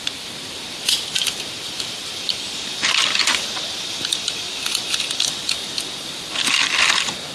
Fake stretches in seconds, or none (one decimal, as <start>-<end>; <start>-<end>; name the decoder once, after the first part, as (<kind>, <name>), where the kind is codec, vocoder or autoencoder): 0.0-7.3 (vocoder, BigVGAN v2)